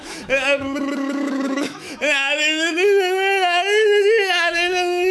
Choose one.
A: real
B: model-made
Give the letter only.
B